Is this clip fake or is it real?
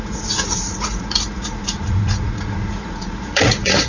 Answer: fake